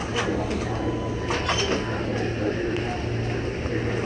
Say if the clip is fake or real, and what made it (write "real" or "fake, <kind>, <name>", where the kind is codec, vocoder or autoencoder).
real